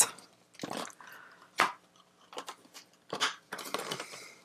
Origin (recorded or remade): recorded